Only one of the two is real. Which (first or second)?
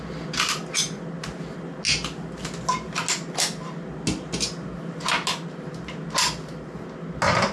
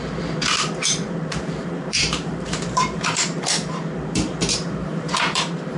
first